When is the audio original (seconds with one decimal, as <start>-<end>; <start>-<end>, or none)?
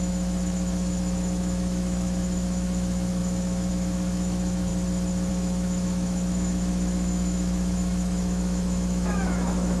4.7-5.3